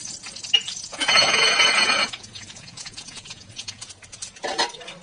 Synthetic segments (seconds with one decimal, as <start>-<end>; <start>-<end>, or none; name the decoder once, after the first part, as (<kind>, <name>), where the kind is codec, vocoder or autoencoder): 0.9-3.9 (vocoder, Vocos)